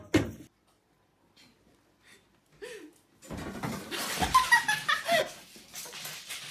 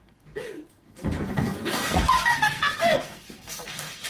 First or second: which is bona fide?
first